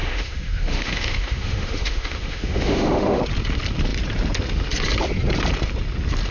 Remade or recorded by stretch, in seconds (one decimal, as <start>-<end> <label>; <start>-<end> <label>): 0.0-3.2 remade; 3.2-6.3 recorded